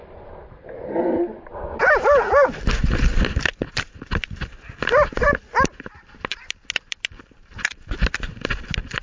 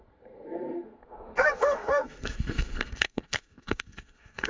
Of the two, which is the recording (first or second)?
first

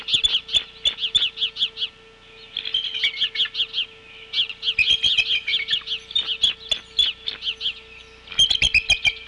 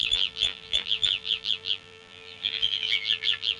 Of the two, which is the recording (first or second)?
first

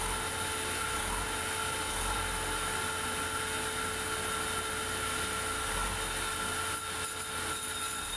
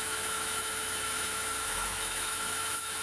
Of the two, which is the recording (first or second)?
first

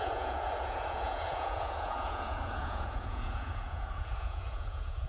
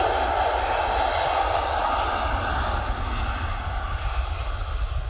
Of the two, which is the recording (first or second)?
second